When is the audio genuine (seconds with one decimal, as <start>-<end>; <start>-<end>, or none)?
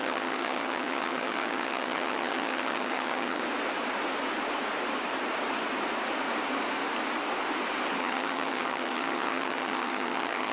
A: 3.4-8.0